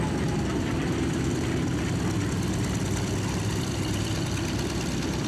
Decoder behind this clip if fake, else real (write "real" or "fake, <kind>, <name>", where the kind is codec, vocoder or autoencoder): real